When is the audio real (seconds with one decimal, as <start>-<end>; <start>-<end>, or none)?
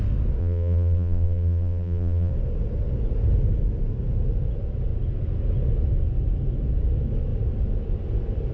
0.0-0.4; 2.3-8.5